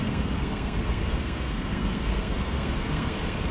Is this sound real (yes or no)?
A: no